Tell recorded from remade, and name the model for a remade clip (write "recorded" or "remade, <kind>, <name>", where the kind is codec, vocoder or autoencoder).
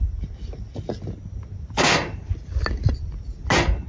recorded